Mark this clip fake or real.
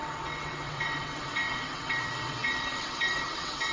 fake